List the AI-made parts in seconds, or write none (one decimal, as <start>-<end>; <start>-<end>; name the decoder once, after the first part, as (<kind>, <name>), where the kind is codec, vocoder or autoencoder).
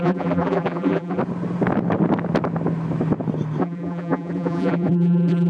0.0-1.2 (vocoder, BigVGAN v2); 3.6-5.5